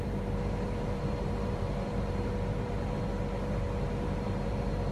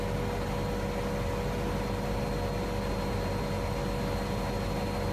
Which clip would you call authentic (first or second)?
second